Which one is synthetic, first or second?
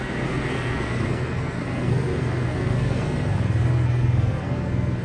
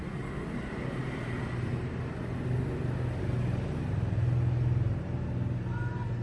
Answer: first